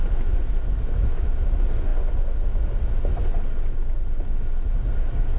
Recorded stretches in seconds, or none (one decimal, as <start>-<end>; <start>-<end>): 0.0-5.4